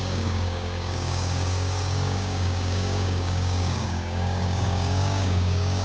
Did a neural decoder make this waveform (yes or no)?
yes